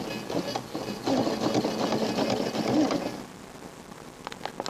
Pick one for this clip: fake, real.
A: real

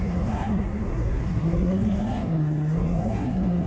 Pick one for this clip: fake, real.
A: fake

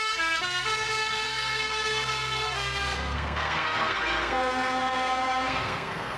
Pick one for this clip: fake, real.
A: fake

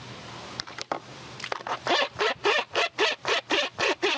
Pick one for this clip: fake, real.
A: real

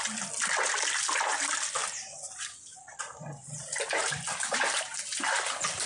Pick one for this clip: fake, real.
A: real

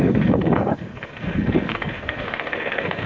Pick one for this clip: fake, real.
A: fake